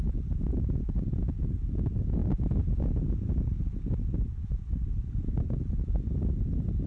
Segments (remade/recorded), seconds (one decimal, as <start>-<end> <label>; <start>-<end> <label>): 0.0-6.9 recorded